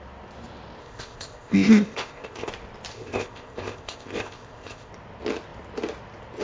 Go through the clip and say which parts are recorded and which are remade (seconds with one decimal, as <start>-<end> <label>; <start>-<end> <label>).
0.0-0.8 recorded; 0.8-2.5 remade; 2.5-2.9 recorded; 2.9-4.9 remade; 4.9-6.4 recorded